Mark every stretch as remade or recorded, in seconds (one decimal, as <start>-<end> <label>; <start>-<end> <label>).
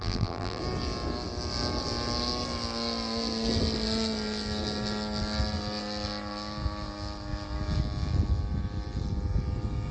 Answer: 0.0-0.6 remade; 0.6-9.9 recorded